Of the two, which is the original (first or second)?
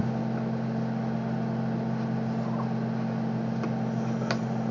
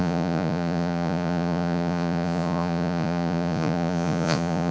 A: first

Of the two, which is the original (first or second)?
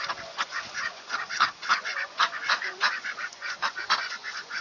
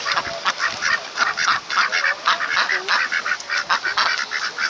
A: second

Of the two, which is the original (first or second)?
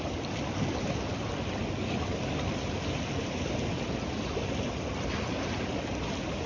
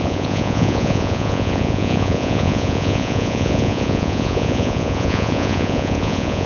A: first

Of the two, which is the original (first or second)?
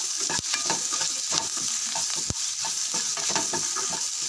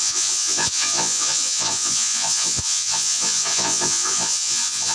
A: first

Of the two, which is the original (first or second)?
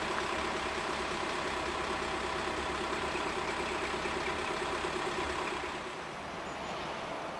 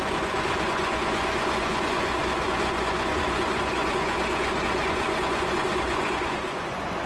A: first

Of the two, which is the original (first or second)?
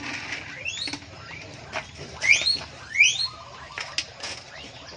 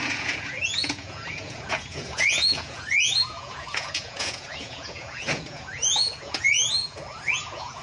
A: first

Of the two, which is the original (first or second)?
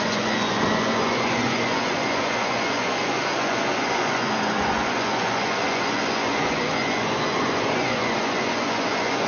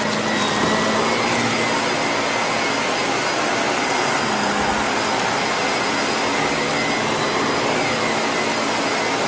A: second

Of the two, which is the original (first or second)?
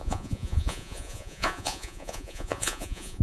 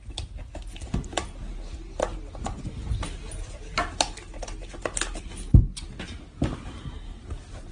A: second